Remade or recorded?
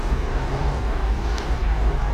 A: remade